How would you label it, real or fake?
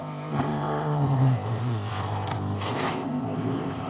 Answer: fake